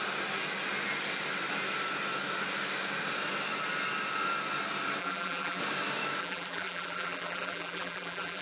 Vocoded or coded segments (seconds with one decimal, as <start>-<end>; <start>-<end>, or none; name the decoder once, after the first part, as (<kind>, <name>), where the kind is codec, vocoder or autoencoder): 5.0-5.6 (vocoder, BigVGAN v2); 6.2-8.4